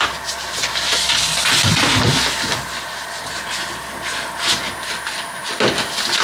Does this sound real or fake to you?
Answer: real